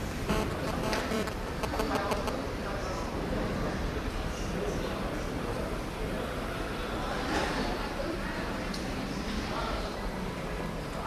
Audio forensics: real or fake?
fake